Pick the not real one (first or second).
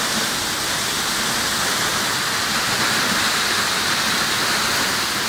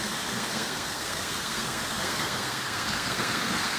second